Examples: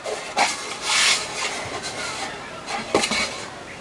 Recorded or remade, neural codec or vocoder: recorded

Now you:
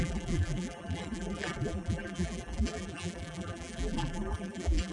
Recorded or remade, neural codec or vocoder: remade, vocoder, BigVGAN v2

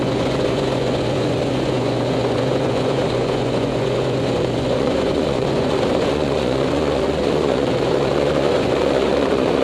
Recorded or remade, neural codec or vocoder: remade, vocoder, Vocos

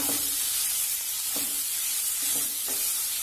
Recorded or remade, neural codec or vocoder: recorded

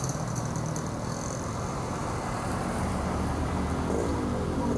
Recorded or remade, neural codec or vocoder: recorded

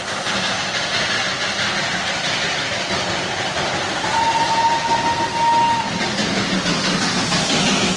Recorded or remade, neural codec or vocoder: recorded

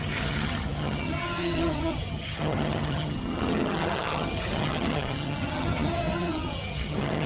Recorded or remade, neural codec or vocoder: remade, vocoder, HiFi-GAN